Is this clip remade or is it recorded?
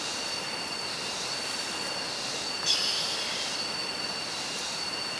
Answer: recorded